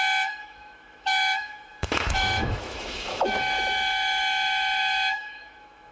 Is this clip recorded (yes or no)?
no